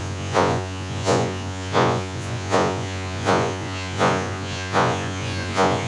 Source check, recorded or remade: remade